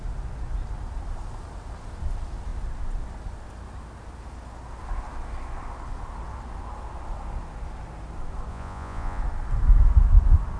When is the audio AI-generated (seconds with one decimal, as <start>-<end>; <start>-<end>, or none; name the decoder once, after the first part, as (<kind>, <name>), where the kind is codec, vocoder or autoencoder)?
8.5-9.2 (vocoder, Vocos)